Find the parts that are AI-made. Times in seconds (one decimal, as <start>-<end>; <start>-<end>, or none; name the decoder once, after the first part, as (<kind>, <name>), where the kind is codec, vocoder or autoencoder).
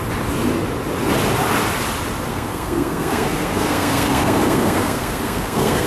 2.3-5.9 (codec, SNAC)